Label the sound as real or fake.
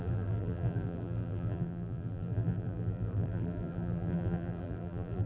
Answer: fake